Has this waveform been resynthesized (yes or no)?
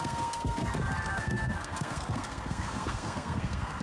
yes